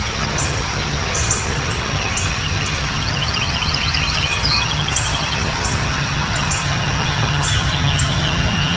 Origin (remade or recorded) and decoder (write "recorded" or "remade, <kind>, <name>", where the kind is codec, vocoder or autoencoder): remade, vocoder, HiFi-GAN